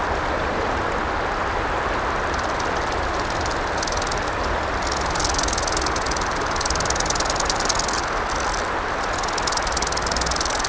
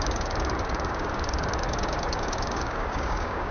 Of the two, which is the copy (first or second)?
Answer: second